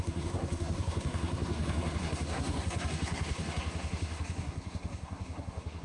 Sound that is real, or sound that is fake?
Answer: fake